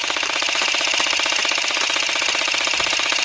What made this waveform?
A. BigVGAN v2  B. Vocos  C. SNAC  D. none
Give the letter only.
D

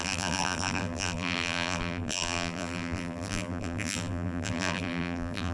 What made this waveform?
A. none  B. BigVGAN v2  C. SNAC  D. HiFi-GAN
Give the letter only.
B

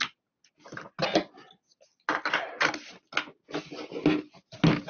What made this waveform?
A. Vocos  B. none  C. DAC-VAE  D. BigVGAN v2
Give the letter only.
B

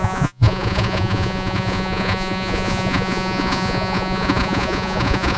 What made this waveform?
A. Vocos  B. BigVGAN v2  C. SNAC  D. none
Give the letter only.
A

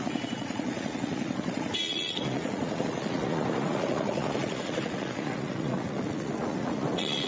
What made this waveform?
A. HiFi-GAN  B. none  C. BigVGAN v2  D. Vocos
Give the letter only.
D